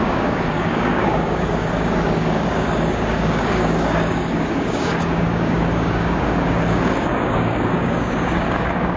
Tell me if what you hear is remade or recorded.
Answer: remade